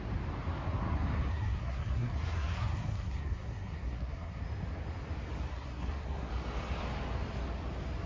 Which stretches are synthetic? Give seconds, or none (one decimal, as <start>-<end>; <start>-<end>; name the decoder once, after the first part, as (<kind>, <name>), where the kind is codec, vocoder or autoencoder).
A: 1.3-4.4 (codec, SNAC); 5.5-6.3